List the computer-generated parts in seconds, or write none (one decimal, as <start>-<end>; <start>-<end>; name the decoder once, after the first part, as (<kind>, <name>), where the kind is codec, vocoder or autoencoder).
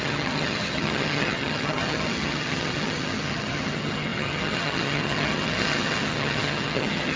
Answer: 0.0-7.2 (vocoder, HiFi-GAN)